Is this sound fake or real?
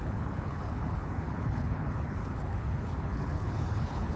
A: fake